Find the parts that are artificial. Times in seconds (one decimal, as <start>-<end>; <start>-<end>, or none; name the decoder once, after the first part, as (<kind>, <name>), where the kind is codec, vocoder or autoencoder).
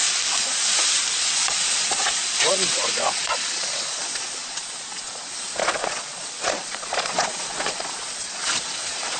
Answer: 1.2-9.2 (vocoder, Vocos)